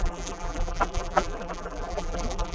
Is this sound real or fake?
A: fake